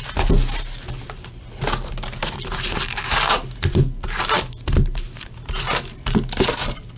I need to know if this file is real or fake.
real